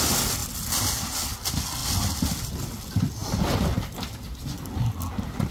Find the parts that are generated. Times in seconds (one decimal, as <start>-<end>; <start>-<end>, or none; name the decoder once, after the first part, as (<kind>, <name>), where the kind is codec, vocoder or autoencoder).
none